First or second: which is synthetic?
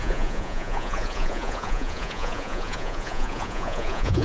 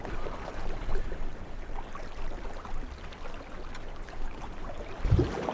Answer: first